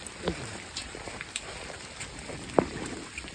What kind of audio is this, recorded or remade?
recorded